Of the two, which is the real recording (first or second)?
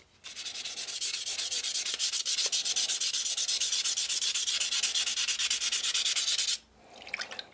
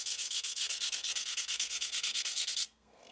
first